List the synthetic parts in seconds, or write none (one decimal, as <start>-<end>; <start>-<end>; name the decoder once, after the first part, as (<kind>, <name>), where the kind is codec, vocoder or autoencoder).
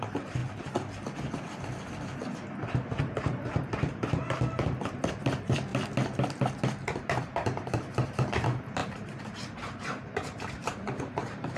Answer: 0.0-0.4 (vocoder, BigVGAN v2); 3.0-4.2; 5.0-5.7; 7.0-11.6